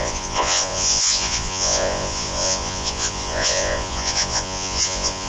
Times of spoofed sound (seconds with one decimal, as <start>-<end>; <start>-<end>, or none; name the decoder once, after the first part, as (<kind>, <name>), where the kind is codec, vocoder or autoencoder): 0.0-5.3 (vocoder, Vocos)